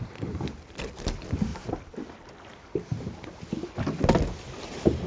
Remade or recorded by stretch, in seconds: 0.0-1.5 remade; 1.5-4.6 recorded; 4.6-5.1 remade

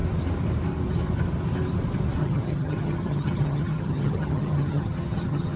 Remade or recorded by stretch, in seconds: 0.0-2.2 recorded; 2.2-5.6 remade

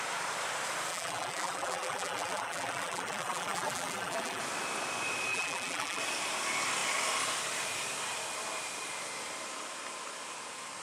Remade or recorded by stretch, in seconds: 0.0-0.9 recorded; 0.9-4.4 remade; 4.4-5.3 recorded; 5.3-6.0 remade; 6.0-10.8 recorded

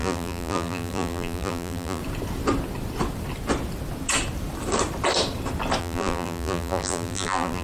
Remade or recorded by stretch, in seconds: 0.0-2.0 remade; 2.0-5.8 recorded; 5.8-7.6 remade

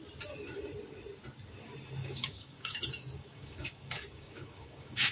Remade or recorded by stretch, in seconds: 0.0-2.0 recorded; 2.0-5.1 remade